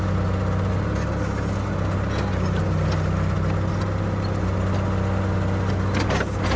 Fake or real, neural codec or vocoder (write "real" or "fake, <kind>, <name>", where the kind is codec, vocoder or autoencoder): real